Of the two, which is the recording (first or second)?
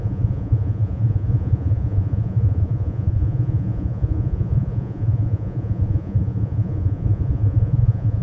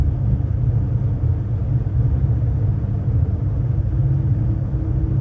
second